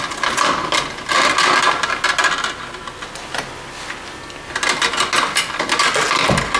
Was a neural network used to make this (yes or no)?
no